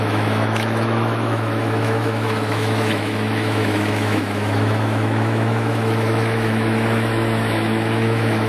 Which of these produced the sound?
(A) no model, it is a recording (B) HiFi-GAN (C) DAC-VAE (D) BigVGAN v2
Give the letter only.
C